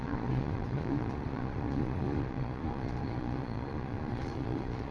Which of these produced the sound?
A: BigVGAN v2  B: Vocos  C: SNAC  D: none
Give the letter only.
B